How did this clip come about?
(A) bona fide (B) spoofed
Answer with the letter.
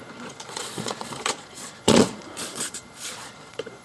B